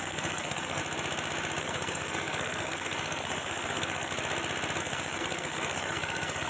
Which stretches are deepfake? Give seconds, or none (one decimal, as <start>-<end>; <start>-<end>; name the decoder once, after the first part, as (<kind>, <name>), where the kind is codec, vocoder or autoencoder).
0.0-0.8 (codec, SNAC); 1.6-4.1; 4.8-6.5